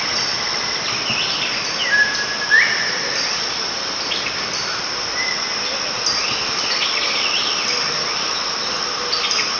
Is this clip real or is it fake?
real